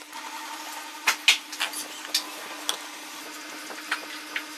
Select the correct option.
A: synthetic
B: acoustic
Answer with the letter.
B